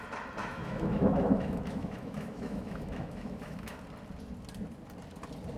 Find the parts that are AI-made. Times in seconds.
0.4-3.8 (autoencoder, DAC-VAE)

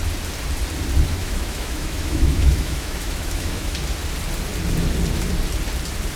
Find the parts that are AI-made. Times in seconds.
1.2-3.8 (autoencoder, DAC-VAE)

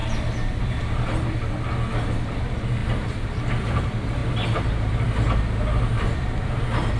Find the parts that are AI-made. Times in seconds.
2.4-4.2 (vocoder, BigVGAN v2); 5.9-7.0

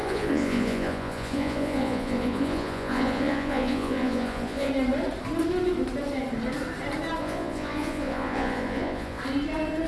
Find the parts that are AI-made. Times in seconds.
0.0-4.7 (vocoder, Vocos); 7.2-9.2

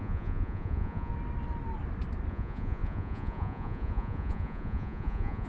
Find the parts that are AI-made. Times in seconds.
0.0-1.1 (vocoder, Vocos); 2.3-5.5

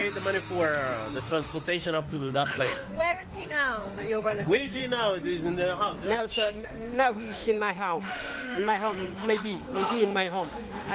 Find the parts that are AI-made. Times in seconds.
1.2-4.8 (autoencoder, DAC-VAE); 6.2-10.9